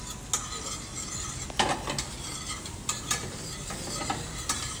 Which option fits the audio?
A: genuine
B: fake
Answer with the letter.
A